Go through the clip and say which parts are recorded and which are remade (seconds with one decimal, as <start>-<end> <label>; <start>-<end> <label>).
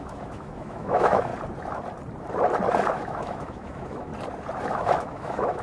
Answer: 0.0-1.3 remade; 1.3-2.9 recorded; 2.9-4.1 remade; 4.1-4.7 recorded; 4.7-5.6 remade